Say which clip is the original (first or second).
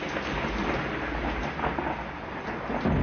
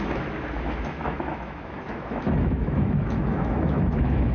first